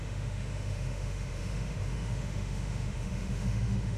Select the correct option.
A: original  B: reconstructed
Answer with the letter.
B